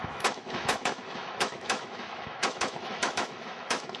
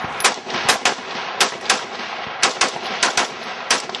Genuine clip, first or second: second